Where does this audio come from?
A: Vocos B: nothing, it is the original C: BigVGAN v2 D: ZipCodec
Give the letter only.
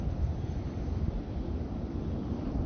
B